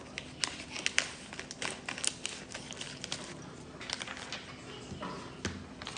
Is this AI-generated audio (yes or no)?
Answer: no